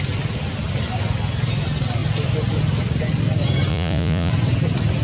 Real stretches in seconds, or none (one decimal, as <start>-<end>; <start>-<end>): 0.0-3.7; 4.3-5.0